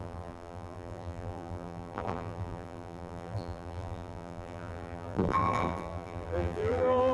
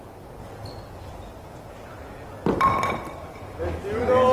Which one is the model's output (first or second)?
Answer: first